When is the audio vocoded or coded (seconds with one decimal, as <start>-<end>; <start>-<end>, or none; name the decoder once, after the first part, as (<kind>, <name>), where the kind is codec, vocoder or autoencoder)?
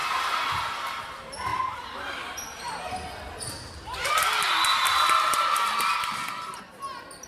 0.0-1.0 (vocoder, BigVGAN v2); 1.5-2.7; 5.3-5.9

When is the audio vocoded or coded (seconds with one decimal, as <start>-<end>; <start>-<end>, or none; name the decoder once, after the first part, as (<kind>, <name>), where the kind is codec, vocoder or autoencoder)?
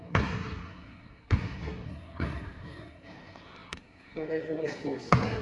0.0-5.4 (codec, SNAC)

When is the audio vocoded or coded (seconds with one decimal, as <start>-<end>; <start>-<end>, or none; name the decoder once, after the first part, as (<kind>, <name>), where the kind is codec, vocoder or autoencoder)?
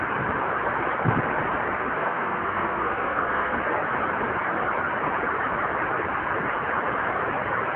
2.0-3.6 (codec, SNAC)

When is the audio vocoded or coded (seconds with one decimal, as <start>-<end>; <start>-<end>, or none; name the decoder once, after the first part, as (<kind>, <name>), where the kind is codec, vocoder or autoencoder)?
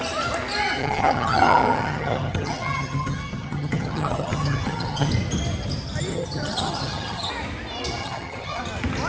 0.8-5.1 (vocoder, HiFi-GAN); 6.1-7.3; 8.0-8.6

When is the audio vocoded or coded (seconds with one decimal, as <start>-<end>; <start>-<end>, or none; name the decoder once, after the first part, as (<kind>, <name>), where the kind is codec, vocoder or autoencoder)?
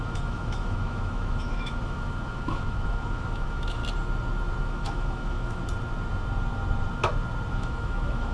0.0-3.8 (autoencoder, DAC-VAE); 4.6-5.6; 7.5-8.3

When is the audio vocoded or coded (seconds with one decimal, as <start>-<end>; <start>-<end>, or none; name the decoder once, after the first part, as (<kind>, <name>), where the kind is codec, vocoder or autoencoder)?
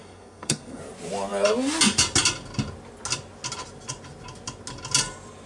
0.0-0.8 (codec, SNAC)